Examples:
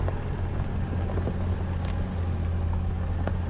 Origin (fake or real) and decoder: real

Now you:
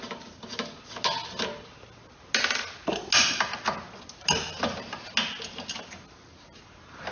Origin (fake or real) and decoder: real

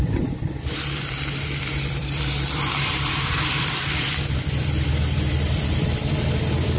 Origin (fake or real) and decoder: fake, vocoder, BigVGAN v2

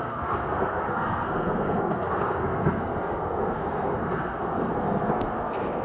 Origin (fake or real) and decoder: fake, codec, SNAC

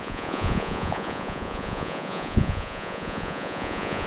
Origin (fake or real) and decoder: fake, vocoder, Vocos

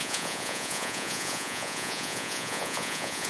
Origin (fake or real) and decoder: fake, vocoder, Vocos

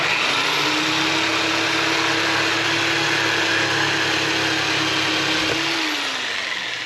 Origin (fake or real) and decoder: real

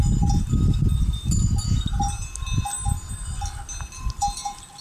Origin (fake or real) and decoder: real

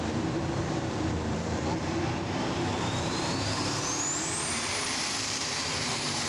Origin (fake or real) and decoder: fake, vocoder, BigVGAN v2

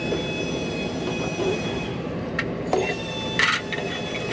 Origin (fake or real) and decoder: real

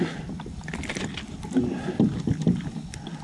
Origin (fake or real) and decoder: real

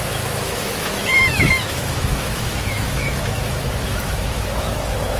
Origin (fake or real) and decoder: fake, autoencoder, DAC-VAE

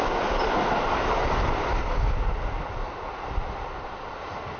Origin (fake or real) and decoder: real